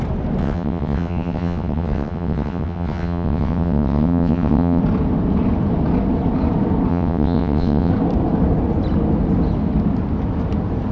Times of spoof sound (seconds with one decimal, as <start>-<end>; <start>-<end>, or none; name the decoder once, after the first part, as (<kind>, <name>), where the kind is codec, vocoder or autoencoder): 0.4-4.8 (vocoder, WaveNeXt); 6.9-7.9